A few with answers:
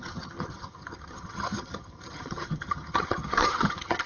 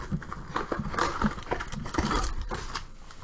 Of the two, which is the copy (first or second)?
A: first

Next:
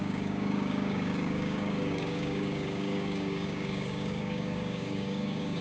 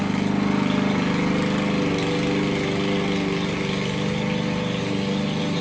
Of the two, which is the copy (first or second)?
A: first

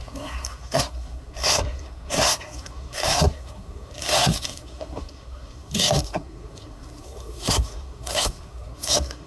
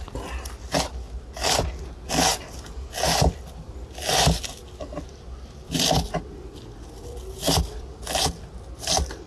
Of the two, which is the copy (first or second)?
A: first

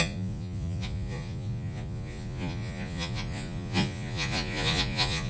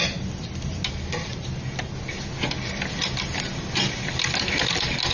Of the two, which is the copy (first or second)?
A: first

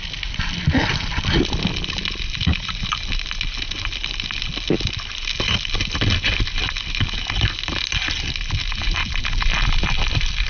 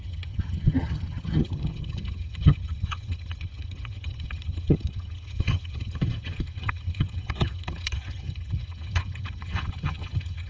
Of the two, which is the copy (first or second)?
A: second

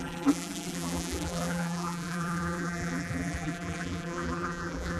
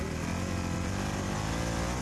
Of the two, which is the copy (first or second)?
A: first